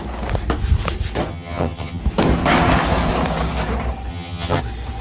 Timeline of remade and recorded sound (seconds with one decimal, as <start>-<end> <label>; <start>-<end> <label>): 0.0-1.3 recorded; 1.3-2.0 remade; 2.0-4.1 recorded; 4.1-4.6 remade; 4.6-5.0 recorded